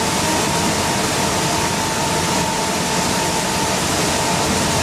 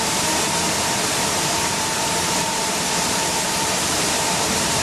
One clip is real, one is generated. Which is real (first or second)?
first